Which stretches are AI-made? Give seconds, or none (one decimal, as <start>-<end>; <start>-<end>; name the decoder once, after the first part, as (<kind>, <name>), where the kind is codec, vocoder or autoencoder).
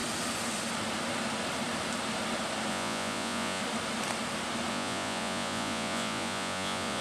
2.7-3.6 (vocoder, Vocos); 4.7-7.0